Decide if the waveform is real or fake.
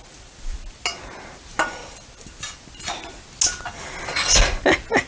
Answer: real